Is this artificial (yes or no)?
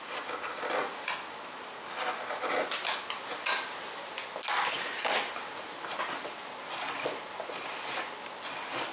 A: no